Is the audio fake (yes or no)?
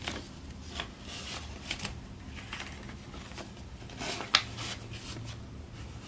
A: no